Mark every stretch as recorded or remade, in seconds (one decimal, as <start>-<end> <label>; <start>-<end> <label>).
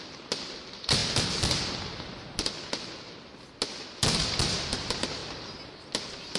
0.0-6.4 recorded